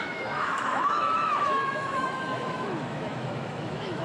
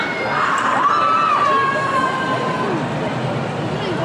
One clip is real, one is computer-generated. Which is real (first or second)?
second